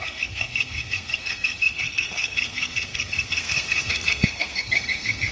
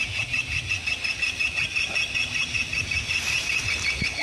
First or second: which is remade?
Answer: first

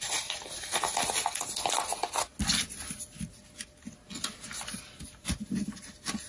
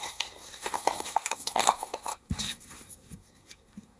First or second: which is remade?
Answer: second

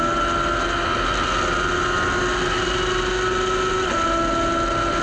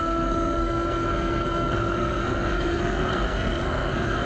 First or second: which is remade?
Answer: second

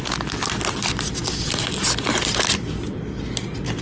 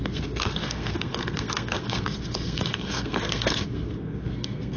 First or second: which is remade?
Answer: second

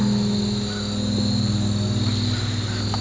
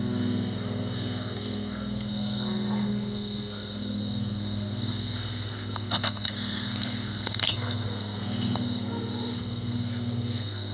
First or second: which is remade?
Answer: second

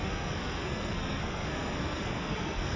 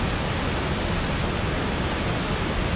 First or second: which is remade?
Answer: first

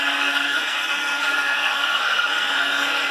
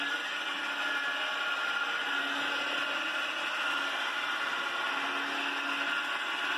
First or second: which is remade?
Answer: first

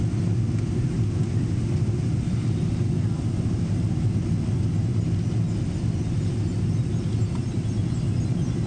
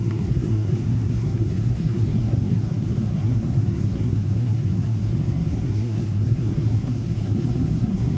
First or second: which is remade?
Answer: second